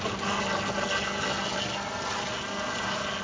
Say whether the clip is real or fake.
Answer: real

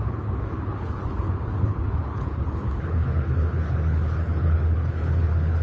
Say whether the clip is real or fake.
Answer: fake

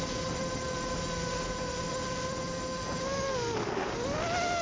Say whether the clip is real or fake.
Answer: real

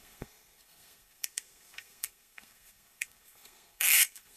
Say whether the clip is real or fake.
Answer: fake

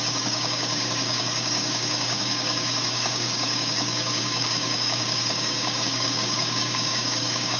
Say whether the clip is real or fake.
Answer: fake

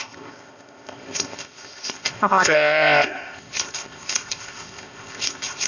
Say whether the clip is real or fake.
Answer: fake